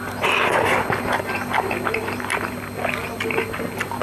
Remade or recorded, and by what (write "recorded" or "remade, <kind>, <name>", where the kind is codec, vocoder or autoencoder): recorded